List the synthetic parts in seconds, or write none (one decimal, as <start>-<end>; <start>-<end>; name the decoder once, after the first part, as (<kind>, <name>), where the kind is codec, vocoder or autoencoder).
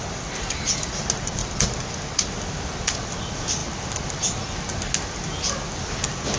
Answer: none